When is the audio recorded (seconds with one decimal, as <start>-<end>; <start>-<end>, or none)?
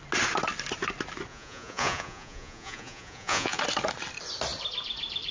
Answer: 0.0-1.3; 3.6-5.3